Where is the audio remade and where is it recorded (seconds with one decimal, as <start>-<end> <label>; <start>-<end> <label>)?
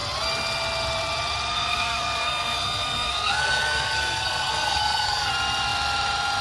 0.0-1.5 recorded; 1.5-5.3 remade; 5.3-6.4 recorded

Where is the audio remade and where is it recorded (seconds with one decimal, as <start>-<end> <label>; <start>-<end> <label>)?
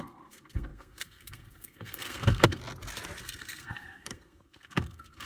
0.0-2.6 remade; 2.6-3.2 recorded; 3.2-5.3 remade